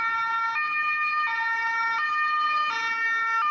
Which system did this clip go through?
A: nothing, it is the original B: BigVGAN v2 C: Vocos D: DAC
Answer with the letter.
A